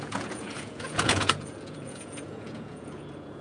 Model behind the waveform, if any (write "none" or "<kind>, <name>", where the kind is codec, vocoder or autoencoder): vocoder, Vocos